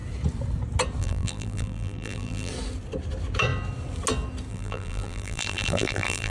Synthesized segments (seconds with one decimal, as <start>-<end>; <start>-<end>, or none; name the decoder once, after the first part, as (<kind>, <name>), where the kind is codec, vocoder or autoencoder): 1.0-2.5 (vocoder, BigVGAN v2); 4.5-6.3